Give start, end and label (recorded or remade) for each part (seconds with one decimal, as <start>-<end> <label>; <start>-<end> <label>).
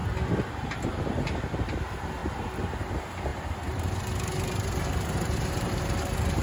0.0-1.8 recorded; 1.8-2.2 remade; 2.2-2.8 recorded; 2.8-6.4 remade